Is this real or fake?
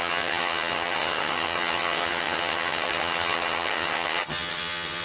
fake